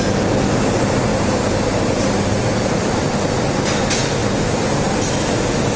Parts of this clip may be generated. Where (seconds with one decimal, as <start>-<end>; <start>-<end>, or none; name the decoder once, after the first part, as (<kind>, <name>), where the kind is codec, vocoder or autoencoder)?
1.1-3.3 (vocoder, BigVGAN v2); 4.2-4.9